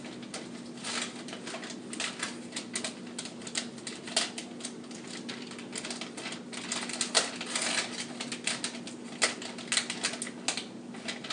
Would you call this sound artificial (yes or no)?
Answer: no